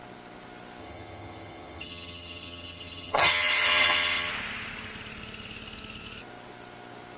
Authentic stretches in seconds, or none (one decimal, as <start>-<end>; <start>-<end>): 0.0-0.8; 4.3-7.2